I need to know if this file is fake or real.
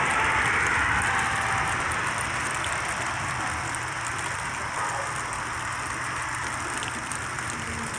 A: real